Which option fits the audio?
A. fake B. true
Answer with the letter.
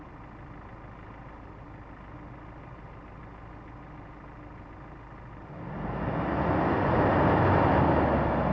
B